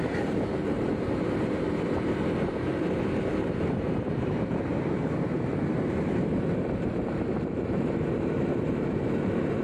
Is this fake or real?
fake